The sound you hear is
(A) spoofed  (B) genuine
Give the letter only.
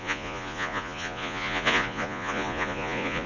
A